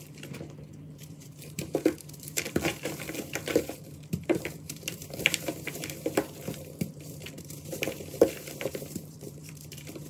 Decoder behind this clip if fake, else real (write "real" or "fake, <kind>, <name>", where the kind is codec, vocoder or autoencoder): fake, vocoder, BigVGAN v2